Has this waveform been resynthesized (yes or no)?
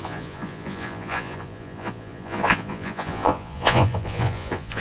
yes